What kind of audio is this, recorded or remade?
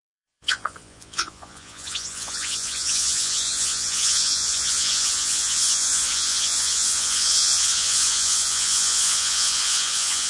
remade